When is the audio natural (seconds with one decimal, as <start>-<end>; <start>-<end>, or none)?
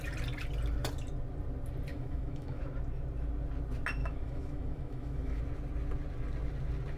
0.0-1.9; 2.6-4.0; 5.4-7.0